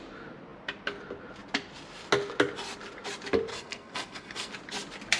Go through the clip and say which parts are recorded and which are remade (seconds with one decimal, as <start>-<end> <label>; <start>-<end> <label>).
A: 0.0-3.5 recorded; 3.5-4.5 remade; 4.5-5.2 recorded